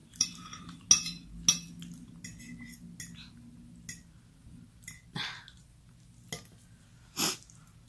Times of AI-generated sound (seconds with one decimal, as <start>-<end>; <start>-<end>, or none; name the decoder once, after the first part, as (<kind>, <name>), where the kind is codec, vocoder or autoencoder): 0.0-0.6 (vocoder, BigVGAN v2)